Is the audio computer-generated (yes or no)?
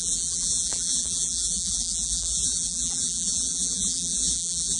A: yes